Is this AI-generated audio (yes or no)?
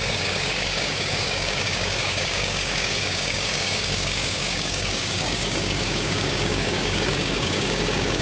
yes